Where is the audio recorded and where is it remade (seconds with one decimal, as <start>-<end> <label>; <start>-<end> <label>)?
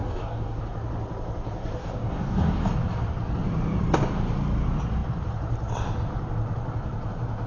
0.0-0.6 remade; 0.6-1.8 recorded; 1.8-2.7 remade; 2.7-7.5 recorded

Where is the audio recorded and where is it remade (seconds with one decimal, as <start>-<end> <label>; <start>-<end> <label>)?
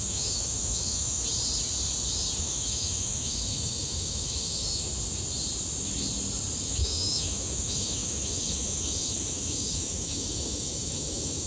0.0-1.2 remade; 1.2-2.4 recorded; 2.4-4.9 remade; 4.9-6.6 recorded; 6.6-11.5 remade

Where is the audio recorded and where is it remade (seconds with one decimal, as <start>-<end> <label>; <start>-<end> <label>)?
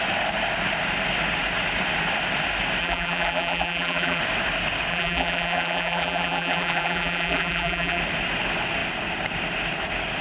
0.0-2.8 recorded; 2.8-4.2 remade; 4.2-4.9 recorded; 4.9-8.0 remade; 8.0-10.2 recorded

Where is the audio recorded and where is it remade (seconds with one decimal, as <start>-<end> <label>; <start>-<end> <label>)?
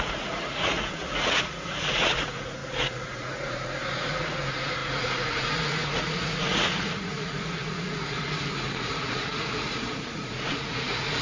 0.0-11.2 remade